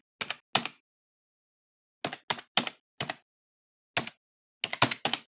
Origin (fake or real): real